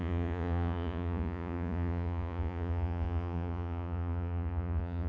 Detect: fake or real fake